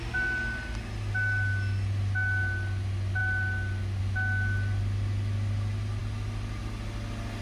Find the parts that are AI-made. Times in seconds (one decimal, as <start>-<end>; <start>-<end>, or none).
none